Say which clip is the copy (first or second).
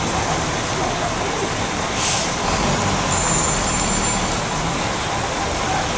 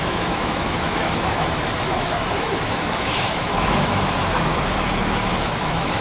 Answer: second